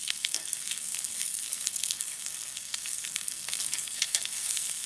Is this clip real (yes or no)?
no